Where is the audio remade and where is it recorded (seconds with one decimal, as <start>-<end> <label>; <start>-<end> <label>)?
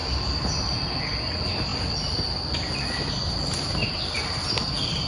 0.0-5.1 recorded